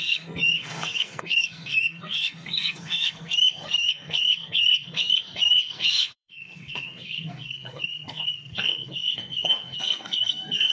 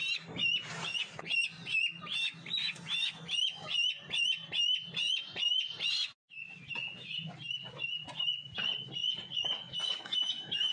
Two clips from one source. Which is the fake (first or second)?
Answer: first